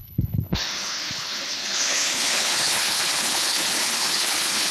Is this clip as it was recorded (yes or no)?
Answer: no